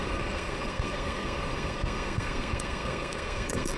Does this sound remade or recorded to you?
remade